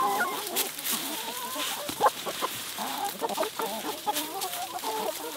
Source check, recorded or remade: remade